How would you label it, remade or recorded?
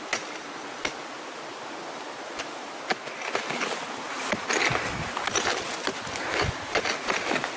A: recorded